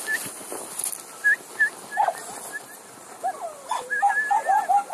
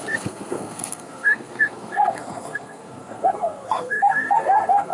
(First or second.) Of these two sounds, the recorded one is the first